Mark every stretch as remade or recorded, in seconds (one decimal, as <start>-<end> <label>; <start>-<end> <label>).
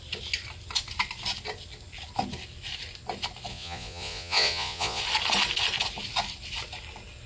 0.0-3.5 recorded; 3.5-5.0 remade; 5.0-7.3 recorded